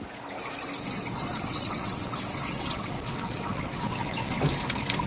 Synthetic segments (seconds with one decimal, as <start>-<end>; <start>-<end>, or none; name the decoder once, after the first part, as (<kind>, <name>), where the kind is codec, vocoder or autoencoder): 1.3-4.4 (vocoder, WaveNeXt)